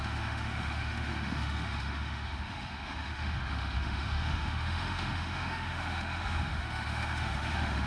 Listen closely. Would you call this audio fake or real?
fake